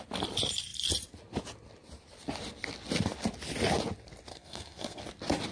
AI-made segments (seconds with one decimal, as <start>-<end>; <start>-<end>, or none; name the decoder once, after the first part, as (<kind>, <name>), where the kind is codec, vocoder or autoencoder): 4.3-5.0 (codec, SNAC)